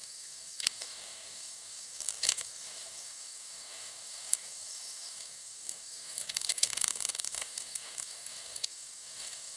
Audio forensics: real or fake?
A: fake